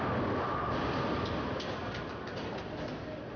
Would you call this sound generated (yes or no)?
no